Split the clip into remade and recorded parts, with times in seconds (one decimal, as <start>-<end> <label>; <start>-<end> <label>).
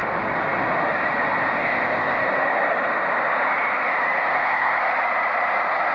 0.0-1.6 recorded; 1.6-2.2 remade; 2.2-4.3 recorded; 4.3-4.8 remade; 4.8-5.9 recorded